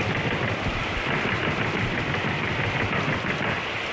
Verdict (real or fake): fake